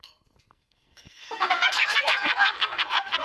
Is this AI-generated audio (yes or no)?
yes